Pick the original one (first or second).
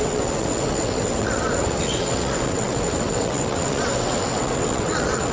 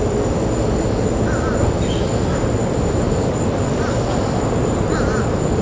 second